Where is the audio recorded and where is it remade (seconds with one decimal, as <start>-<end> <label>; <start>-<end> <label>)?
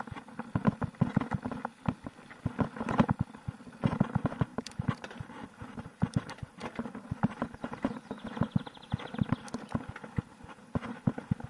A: 0.0-4.5 recorded; 4.5-7.8 remade; 7.8-11.5 recorded